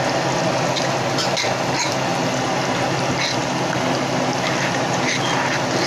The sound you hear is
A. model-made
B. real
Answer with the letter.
B